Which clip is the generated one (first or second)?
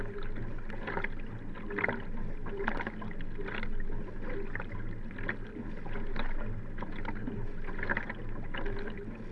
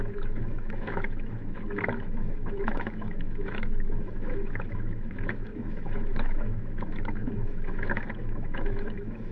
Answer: second